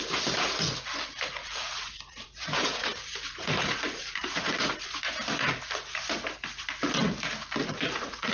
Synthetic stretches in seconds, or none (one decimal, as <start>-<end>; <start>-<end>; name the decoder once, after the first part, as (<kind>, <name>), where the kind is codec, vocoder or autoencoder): 1.4-5.0 (vocoder, Vocos); 7.7-8.3